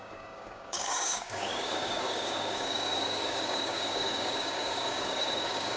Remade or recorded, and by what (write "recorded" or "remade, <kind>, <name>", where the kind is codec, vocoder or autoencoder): remade, codec, DAC